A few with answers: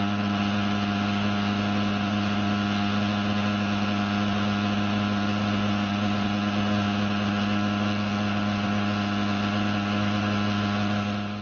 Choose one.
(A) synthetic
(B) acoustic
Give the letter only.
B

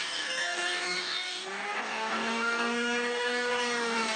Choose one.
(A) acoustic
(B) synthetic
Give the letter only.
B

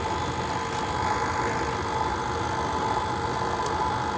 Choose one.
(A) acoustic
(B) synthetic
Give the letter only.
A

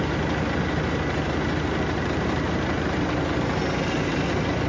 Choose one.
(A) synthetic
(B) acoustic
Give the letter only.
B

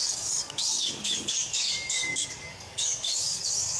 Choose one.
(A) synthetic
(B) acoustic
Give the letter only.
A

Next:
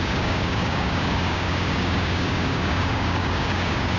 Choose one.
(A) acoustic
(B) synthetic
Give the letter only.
B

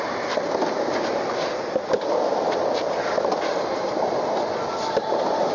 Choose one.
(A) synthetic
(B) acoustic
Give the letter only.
B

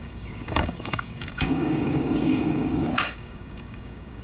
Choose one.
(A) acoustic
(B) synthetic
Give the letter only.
B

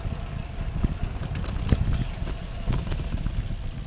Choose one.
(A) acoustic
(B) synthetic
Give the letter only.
A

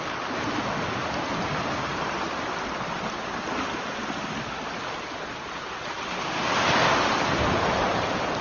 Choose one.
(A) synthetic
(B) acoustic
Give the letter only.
B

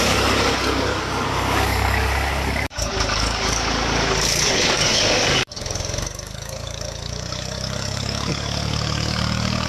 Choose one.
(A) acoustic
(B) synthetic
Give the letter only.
B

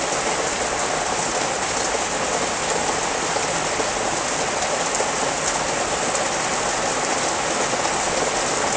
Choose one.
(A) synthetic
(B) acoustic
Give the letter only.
B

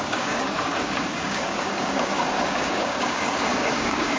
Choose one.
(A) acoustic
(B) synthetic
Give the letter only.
B